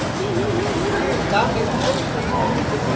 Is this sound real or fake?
real